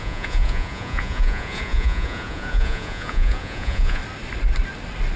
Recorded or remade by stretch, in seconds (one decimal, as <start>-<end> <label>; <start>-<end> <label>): 0.0-4.0 remade; 4.0-5.2 recorded